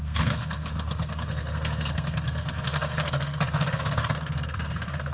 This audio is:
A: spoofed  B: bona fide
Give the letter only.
A